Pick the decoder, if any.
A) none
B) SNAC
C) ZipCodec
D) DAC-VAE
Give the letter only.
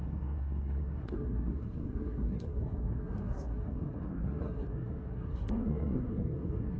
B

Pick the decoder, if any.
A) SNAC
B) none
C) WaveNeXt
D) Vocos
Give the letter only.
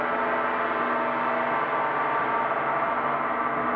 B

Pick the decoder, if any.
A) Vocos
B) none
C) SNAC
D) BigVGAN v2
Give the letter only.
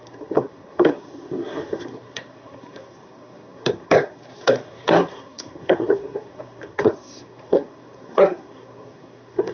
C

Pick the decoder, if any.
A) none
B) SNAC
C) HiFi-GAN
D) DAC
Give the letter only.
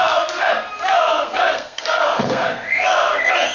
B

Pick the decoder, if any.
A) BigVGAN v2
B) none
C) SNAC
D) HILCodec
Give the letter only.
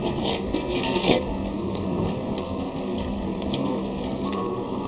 C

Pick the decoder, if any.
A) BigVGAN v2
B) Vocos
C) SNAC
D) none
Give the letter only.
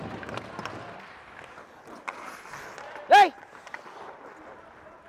D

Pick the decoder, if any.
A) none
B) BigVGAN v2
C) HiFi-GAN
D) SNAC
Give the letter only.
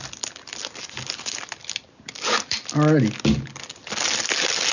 A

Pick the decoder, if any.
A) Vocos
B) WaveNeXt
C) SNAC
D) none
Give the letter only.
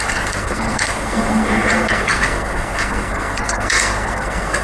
C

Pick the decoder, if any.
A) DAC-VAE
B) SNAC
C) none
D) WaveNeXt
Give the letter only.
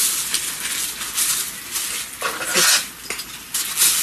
C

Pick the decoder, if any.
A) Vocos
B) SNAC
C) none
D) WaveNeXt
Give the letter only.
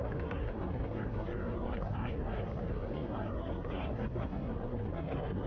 B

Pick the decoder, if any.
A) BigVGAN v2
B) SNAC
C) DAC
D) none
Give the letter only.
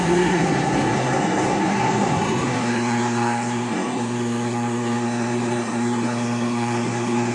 B